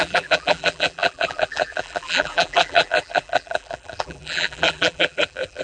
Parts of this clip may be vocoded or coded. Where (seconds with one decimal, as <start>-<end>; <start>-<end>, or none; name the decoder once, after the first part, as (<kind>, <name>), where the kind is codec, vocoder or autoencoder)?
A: 0.0-5.6 (vocoder, BigVGAN v2)